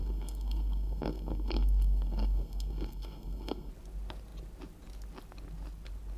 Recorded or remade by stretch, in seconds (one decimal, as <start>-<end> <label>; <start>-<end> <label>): 0.0-3.7 remade; 3.7-6.2 recorded